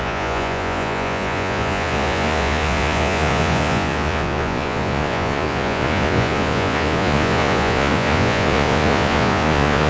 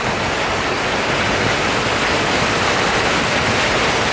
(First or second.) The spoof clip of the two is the first